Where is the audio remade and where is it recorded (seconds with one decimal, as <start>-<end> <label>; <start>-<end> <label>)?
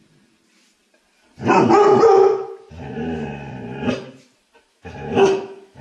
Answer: 0.0-4.7 recorded; 4.7-5.8 remade